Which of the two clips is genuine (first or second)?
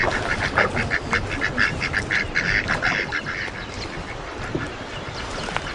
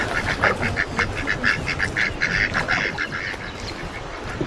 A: second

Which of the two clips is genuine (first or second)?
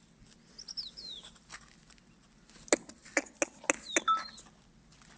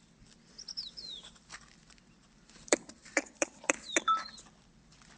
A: first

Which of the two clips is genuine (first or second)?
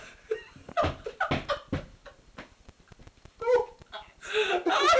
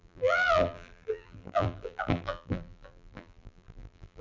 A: first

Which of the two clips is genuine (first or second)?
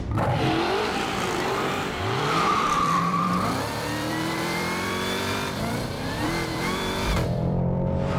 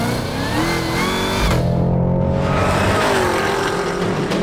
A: second